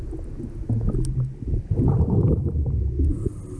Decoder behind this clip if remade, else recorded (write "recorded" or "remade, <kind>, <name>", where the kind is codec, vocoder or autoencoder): recorded